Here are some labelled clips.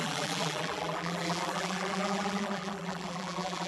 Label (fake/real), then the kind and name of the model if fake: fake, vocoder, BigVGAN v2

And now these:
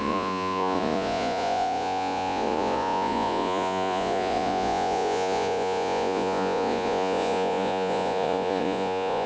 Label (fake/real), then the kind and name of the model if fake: fake, vocoder, Vocos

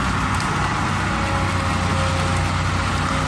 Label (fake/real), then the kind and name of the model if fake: real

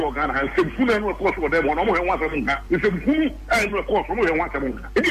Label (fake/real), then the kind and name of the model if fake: real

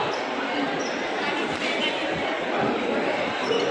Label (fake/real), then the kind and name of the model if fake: real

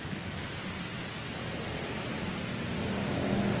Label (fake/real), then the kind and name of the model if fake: real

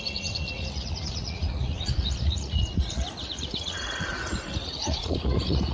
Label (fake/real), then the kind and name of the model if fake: fake, vocoder, Vocos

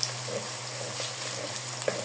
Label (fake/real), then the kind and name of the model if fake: real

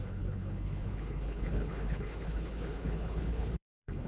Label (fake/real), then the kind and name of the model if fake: fake, codec, HILCodec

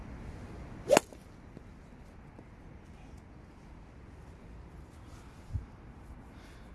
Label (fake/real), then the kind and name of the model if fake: real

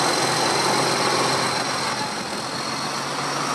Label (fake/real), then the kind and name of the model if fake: real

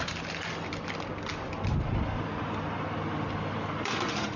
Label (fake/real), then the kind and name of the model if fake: real